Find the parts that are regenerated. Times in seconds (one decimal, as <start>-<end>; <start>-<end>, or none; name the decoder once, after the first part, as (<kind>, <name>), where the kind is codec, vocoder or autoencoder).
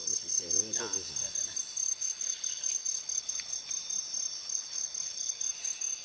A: 0.0-0.8 (codec, HILCodec); 1.8-3.7; 4.4-5.5